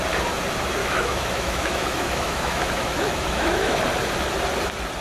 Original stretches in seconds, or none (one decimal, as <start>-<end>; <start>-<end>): 0.0-0.8; 3.8-5.0